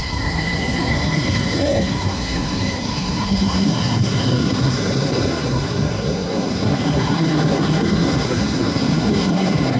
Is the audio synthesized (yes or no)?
yes